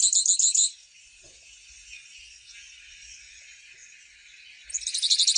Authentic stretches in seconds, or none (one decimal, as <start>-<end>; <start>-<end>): 0.0-0.4; 3.6-5.4